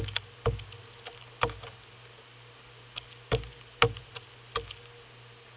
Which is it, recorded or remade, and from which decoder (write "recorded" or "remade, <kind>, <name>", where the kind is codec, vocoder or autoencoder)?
recorded